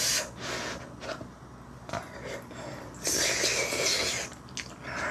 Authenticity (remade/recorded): recorded